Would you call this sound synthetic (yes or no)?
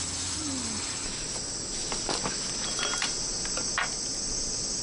no